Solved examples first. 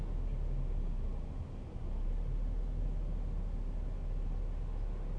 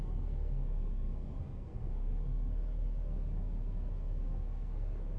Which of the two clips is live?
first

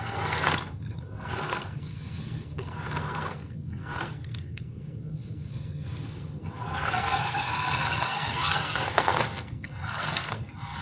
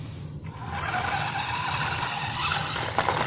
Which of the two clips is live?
second